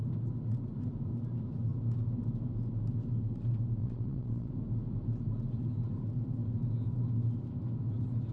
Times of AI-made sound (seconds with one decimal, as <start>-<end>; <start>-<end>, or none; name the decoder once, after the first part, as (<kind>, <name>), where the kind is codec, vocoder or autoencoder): 3.8-4.5 (vocoder, WaveNeXt)